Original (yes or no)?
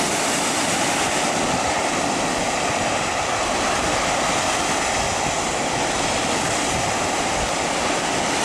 yes